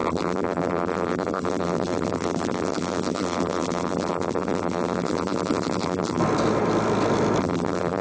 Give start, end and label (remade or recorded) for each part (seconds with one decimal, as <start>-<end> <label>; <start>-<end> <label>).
0.0-6.2 remade; 6.2-7.4 recorded; 7.4-8.0 remade